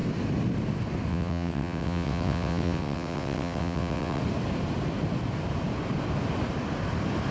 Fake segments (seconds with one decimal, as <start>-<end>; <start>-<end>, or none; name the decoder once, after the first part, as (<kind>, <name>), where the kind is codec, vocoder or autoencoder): 1.1-4.2 (vocoder, WaveNeXt)